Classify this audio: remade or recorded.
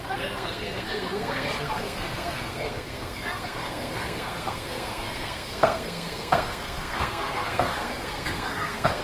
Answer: remade